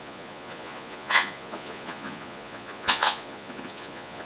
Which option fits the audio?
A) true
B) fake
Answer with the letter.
B